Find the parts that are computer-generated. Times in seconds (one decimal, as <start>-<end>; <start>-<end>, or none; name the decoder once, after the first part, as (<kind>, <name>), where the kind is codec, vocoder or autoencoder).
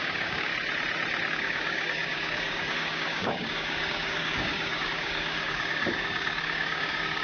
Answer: 0.0-0.5 (codec, DAC); 1.3-7.2